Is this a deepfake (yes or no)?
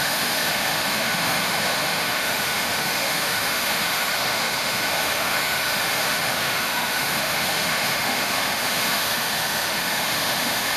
yes